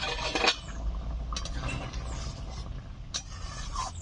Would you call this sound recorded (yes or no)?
yes